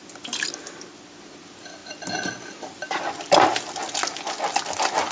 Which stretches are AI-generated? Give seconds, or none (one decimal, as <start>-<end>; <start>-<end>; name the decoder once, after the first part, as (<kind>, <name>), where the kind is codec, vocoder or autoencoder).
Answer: none